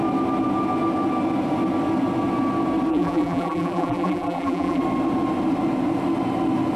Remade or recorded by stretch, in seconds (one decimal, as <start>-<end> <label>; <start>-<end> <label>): 0.0-2.9 recorded; 2.9-4.8 remade; 4.8-6.8 recorded

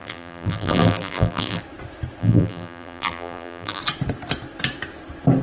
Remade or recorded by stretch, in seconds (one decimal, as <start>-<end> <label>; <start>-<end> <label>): 0.0-1.6 remade; 1.6-2.2 recorded; 2.2-3.8 remade; 3.8-5.4 recorded

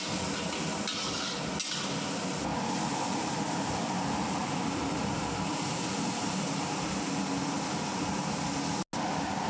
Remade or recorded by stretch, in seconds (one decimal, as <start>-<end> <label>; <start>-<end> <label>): 0.0-4.4 recorded; 4.4-8.2 remade; 8.2-9.5 recorded

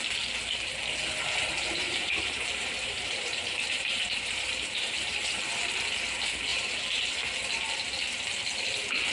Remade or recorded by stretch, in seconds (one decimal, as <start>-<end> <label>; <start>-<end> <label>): 0.0-1.5 recorded; 1.5-5.4 remade; 5.4-6.5 recorded; 6.5-7.2 remade; 7.2-9.1 recorded

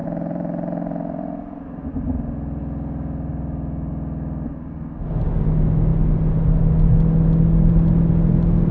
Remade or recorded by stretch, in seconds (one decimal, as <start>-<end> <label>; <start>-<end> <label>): 0.0-2.6 remade; 2.6-3.3 recorded; 3.3-3.9 remade; 3.9-8.7 recorded

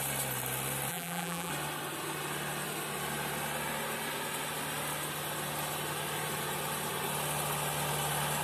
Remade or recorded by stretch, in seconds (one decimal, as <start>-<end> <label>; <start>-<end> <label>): 0.0-0.9 recorded; 0.9-1.5 remade; 1.5-8.4 recorded

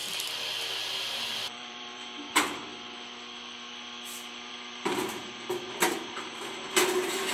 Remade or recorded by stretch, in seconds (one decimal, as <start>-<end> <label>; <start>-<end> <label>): 0.0-1.0 recorded; 1.0-2.7 remade; 2.7-4.5 recorded; 4.5-5.2 remade; 5.2-5.9 recorded; 5.9-7.3 remade